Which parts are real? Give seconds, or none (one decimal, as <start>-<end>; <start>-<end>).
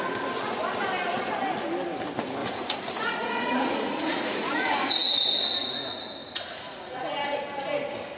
0.0-2.4; 5.3-6.2; 7.4-8.2